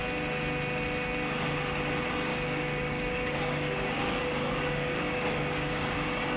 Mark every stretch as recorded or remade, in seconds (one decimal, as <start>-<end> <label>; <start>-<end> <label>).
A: 0.0-2.3 recorded; 2.3-6.4 remade